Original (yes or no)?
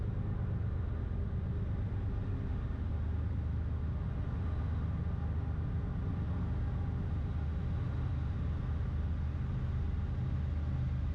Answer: yes